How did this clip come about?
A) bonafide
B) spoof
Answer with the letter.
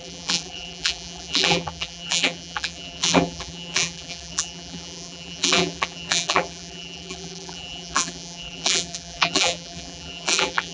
B